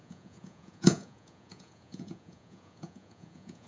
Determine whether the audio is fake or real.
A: fake